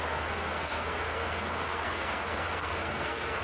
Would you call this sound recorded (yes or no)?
no